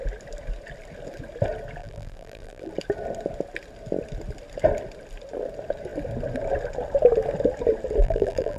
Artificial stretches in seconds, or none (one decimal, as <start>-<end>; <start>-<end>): 1.8-2.7; 8.0-8.6